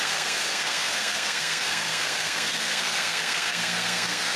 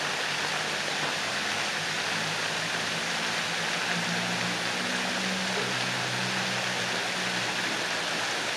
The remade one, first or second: first